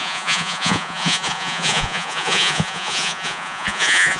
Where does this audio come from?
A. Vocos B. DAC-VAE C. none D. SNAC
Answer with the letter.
A